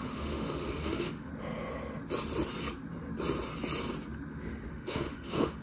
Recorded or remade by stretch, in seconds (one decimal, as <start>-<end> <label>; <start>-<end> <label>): 0.0-1.3 remade; 1.3-4.7 recorded; 4.7-5.6 remade